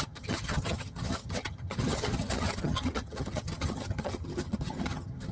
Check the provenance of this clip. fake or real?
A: fake